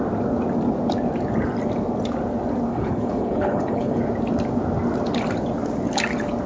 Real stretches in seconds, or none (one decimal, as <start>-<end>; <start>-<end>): 0.0-2.7; 4.0-6.5